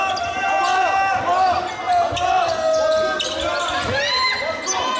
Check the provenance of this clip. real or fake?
real